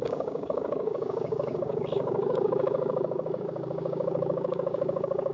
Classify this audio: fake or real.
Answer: fake